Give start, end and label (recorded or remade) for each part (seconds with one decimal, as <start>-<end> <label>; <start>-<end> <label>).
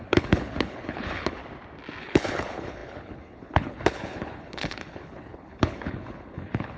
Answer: 0.0-1.4 remade; 1.4-2.0 recorded; 2.0-6.8 remade